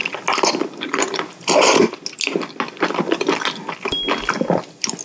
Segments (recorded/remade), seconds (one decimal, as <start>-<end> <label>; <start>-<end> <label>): 0.0-5.0 recorded